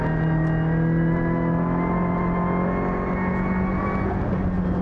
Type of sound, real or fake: real